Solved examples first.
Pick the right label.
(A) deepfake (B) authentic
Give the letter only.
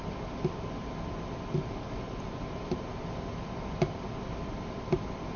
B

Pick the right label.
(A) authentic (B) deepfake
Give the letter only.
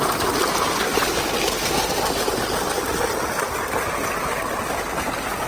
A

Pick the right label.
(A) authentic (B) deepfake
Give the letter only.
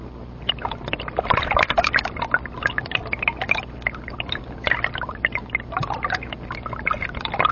B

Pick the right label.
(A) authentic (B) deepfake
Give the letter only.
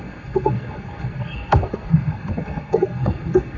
B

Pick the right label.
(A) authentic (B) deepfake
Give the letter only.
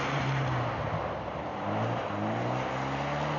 A